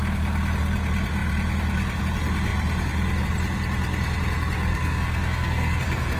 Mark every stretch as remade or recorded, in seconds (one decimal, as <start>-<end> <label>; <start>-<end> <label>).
0.0-4.7 recorded; 4.7-6.2 remade

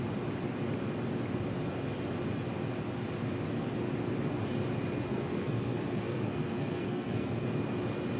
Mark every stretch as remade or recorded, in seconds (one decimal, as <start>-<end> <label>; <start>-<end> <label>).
0.0-5.1 recorded; 5.1-7.4 remade; 7.4-8.2 recorded

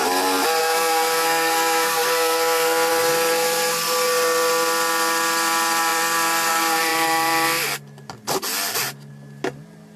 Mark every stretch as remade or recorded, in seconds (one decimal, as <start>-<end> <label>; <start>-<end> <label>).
0.0-0.6 recorded; 0.6-2.9 remade; 2.9-10.0 recorded

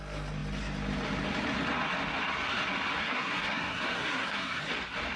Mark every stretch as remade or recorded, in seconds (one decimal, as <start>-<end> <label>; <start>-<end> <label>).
0.0-3.0 recorded; 3.0-4.6 remade; 4.6-5.2 recorded

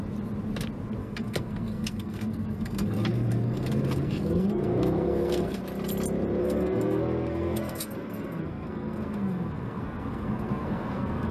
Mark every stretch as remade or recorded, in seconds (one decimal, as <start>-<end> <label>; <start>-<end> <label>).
0.0-1.0 recorded; 1.0-5.6 remade; 5.6-6.4 recorded; 6.4-11.3 remade

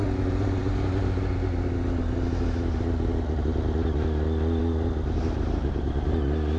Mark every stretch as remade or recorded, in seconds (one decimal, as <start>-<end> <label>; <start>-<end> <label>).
0.0-6.6 recorded